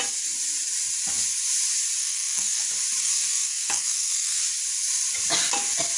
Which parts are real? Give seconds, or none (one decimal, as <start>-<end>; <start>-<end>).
0.0-2.0; 2.6-3.0; 4.4-6.0